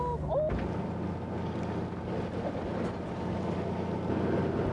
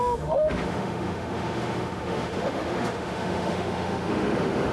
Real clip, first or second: first